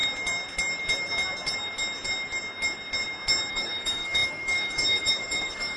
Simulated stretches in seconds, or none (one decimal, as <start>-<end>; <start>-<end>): 3.5-5.8